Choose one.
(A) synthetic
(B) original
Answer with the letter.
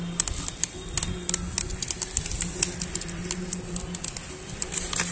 B